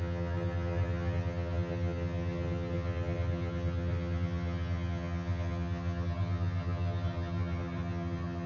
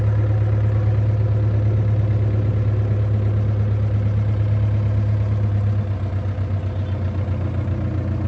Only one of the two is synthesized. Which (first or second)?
first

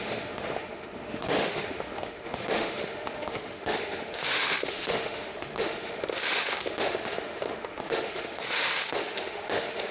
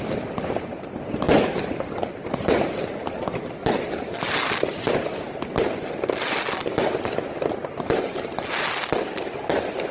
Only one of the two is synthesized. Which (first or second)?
first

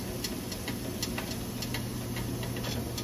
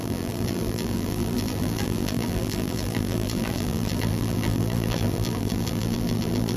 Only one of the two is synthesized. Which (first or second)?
second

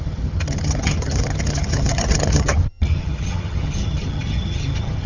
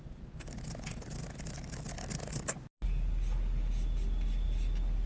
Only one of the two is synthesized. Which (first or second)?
first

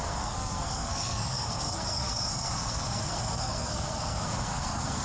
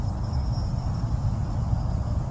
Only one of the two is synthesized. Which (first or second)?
first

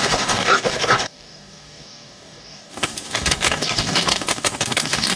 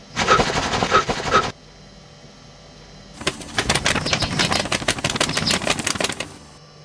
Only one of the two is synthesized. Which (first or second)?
first